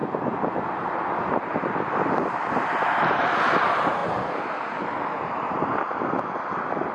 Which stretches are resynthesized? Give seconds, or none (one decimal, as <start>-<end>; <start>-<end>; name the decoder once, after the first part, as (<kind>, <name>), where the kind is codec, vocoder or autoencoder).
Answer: 1.3-4.0 (vocoder, BigVGAN v2); 5.1-6.9